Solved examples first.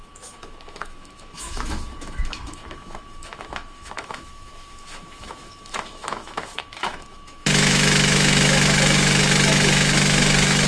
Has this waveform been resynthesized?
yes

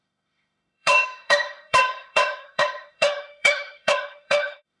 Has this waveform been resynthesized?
yes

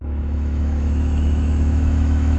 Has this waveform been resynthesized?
yes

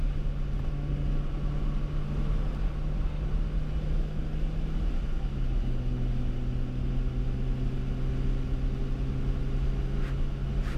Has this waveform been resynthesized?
no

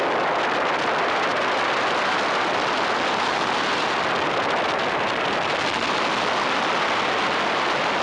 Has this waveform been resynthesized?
no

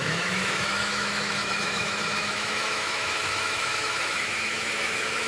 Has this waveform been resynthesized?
yes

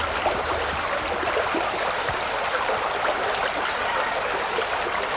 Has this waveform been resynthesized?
no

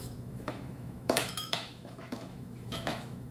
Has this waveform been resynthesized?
yes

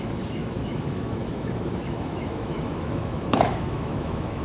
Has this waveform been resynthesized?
yes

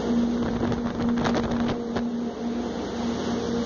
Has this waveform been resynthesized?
no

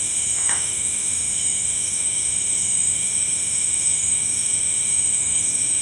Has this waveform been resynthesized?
yes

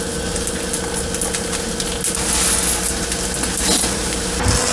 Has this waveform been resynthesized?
no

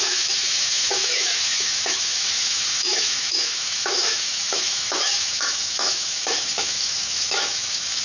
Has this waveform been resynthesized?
yes